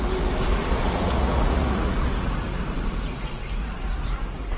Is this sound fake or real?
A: fake